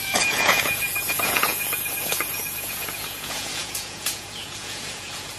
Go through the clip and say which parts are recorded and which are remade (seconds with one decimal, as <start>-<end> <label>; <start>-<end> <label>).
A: 0.0-5.4 remade